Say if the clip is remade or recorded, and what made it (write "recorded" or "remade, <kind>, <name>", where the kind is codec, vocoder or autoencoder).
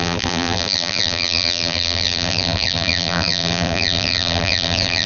remade, vocoder, BigVGAN v2